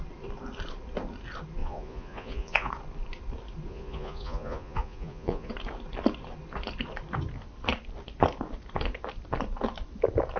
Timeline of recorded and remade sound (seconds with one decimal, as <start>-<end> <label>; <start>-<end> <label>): 0.0-1.6 recorded; 1.6-2.7 remade; 2.7-3.7 recorded; 3.7-5.5 remade; 5.5-10.4 recorded